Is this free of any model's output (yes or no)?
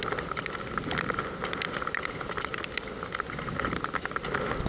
yes